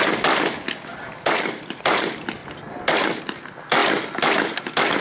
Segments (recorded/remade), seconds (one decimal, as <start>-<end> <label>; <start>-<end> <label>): 0.0-0.9 recorded; 0.9-2.0 remade; 2.0-5.0 recorded